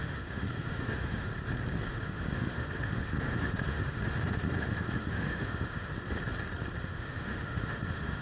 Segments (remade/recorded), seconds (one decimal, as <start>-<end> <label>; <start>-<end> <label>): 0.0-1.3 remade; 1.3-1.9 recorded; 1.9-5.9 remade; 5.9-6.8 recorded; 6.8-8.2 remade